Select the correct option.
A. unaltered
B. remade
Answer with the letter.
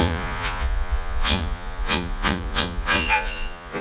B